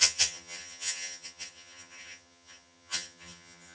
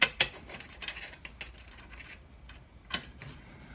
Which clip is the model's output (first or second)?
first